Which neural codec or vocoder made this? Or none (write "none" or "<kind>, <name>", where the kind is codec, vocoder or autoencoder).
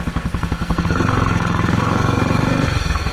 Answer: codec, SNAC